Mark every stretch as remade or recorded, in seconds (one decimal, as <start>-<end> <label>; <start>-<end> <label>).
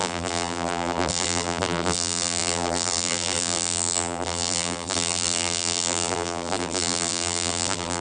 0.0-8.0 remade